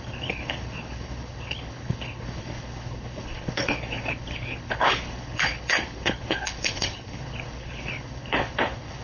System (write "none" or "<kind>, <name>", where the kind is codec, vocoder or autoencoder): codec, HILCodec